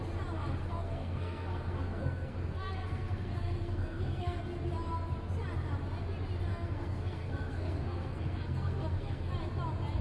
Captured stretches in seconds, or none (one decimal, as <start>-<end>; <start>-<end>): 0.0-0.6; 4.4-6.5; 9.3-10.0